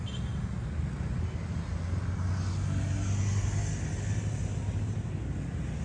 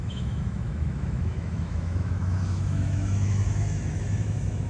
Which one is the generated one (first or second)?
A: second